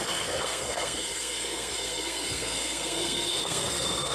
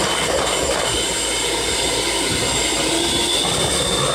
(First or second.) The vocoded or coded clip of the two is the first